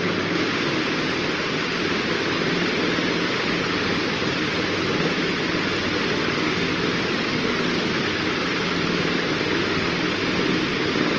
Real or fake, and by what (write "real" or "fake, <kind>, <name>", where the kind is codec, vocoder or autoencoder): real